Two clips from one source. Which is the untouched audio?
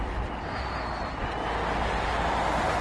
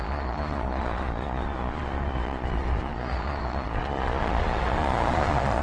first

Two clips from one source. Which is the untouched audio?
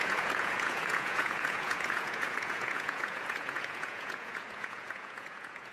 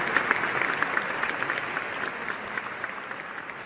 second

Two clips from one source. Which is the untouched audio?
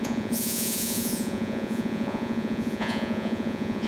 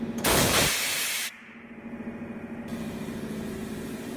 second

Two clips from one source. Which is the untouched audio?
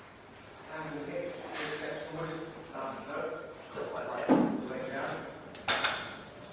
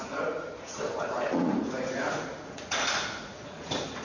first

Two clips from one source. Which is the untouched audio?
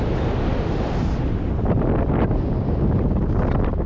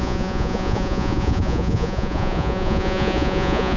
first